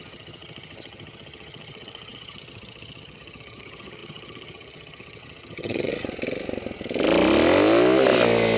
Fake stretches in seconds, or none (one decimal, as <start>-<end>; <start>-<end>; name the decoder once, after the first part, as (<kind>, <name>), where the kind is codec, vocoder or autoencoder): 0.0-5.9 (vocoder, HiFi-GAN)